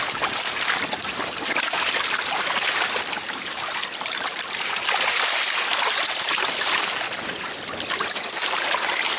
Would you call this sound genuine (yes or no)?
yes